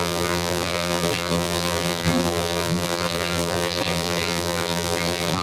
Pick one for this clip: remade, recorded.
remade